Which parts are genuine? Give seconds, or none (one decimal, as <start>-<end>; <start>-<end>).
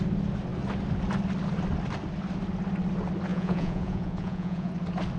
0.0-3.3; 4.7-5.2